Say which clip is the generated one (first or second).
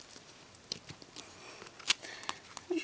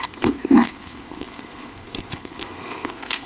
second